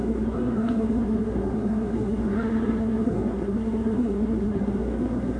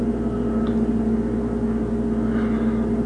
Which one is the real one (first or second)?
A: second